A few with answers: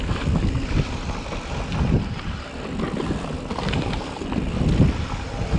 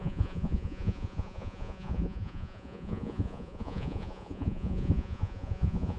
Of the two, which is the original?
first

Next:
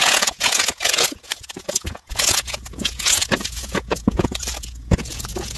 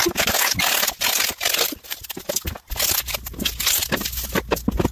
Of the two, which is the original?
second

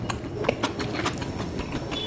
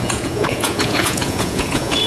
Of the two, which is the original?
first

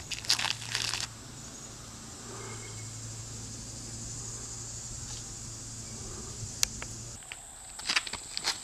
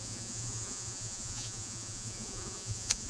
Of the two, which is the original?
first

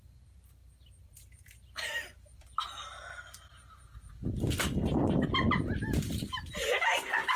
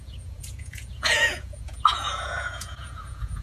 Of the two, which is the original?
first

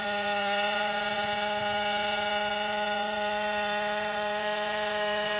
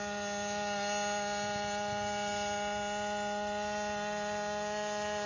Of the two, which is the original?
second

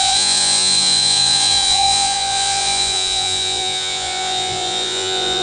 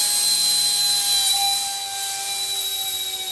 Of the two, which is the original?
second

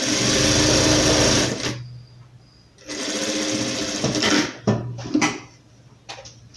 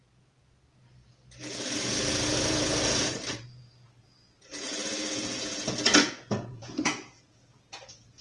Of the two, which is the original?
first